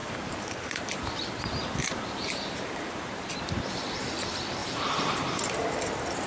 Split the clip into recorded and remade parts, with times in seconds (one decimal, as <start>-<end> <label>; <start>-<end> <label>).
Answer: 0.0-3.3 remade; 3.3-4.6 recorded; 4.6-5.4 remade; 5.4-6.3 recorded